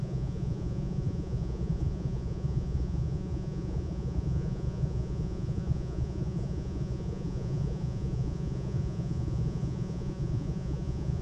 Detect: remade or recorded remade